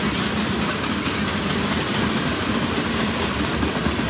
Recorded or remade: recorded